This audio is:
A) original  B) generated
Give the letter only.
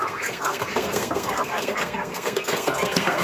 B